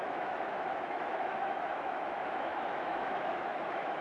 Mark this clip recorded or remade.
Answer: remade